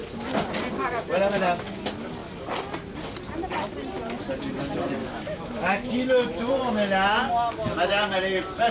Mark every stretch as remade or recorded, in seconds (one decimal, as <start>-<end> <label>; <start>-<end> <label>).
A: 0.0-5.0 recorded; 5.0-6.5 remade; 6.5-8.7 recorded